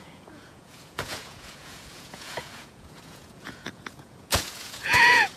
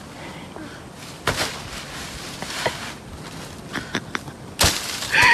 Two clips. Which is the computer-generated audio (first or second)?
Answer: first